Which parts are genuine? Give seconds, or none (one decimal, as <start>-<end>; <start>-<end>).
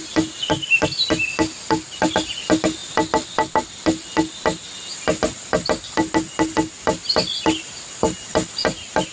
0.0-9.1